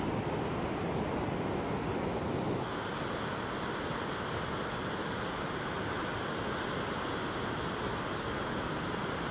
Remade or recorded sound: recorded